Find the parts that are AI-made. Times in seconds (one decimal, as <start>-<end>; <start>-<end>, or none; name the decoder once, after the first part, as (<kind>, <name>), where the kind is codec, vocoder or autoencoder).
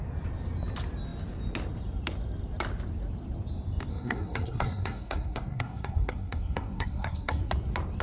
3.9-7.5 (codec, SNAC)